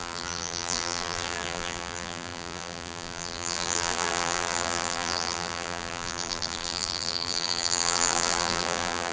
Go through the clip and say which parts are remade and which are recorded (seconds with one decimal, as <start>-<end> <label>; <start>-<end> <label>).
0.0-9.1 remade